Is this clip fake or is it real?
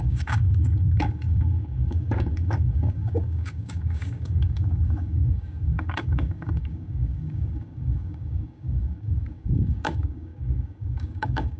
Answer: fake